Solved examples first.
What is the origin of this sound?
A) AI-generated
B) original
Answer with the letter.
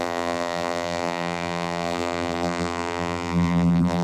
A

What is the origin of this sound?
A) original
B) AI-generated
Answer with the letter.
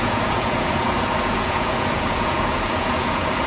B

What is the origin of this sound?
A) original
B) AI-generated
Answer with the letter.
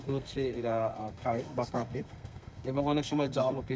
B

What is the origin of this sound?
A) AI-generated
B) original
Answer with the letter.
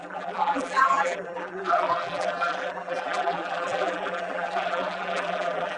A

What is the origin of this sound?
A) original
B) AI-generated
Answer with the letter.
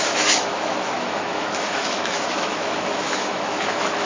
B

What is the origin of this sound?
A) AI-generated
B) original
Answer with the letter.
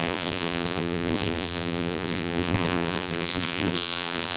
A